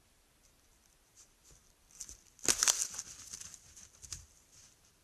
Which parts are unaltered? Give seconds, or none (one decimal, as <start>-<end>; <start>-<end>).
0.0-5.0